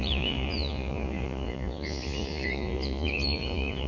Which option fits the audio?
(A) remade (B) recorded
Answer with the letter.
A